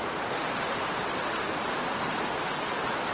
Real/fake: real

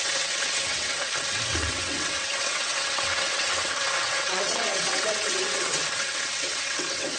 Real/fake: fake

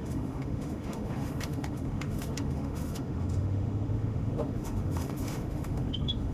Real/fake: fake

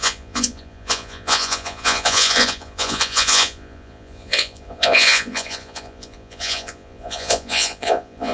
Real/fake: fake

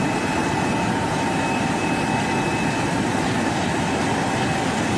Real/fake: fake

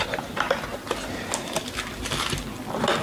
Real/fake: real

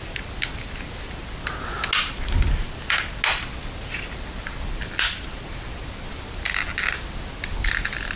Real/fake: real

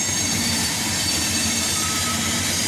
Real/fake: fake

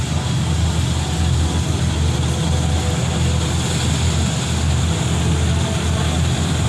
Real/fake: real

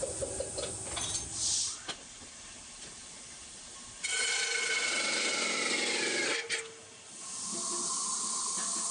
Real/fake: real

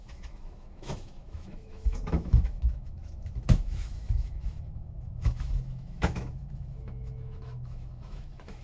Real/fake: fake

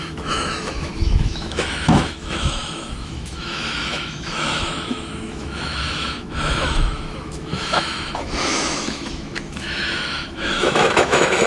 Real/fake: fake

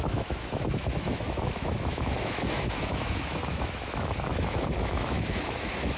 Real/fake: fake